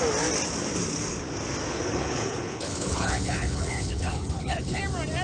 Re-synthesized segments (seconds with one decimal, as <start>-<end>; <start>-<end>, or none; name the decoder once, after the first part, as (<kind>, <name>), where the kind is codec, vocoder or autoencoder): 1.7-4.8 (codec, HILCodec)